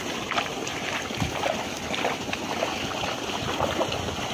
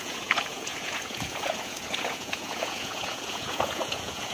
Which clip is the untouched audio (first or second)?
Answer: first